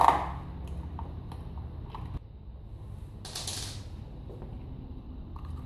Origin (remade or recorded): recorded